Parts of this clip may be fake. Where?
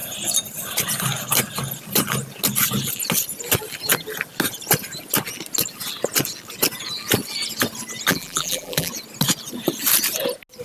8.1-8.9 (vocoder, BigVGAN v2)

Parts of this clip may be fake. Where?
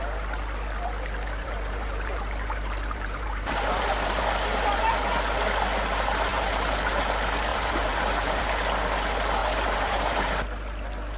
1.4-4.2 (vocoder, BigVGAN v2); 6.3-7.0; 7.5-8.4; 9.4-10.3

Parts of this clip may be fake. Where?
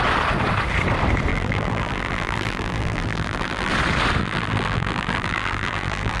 1.3-3.7 (vocoder, BigVGAN v2); 4.2-6.2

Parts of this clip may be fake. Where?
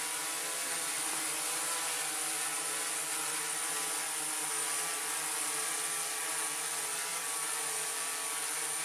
6.9-7.7 (vocoder, BigVGAN v2)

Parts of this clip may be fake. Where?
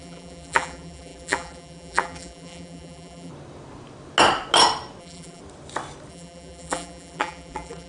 0.0-3.3 (vocoder, BigVGAN v2); 5.0-5.4; 6.1-7.9